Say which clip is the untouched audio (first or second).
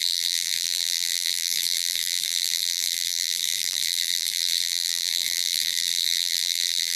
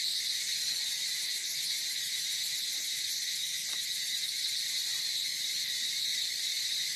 second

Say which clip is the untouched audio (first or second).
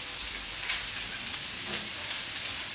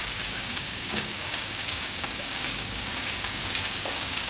first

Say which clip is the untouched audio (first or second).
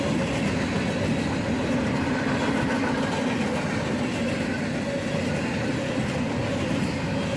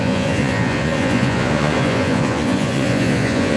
first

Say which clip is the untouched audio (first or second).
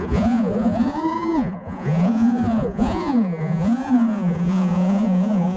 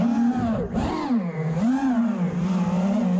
second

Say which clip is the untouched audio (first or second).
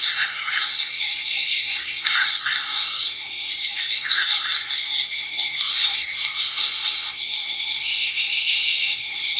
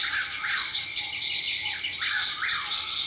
second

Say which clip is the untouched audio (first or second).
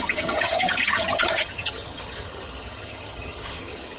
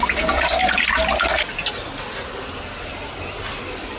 second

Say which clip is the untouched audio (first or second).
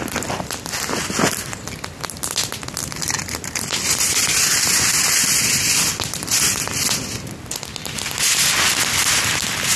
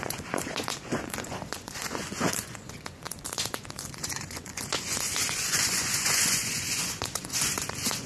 first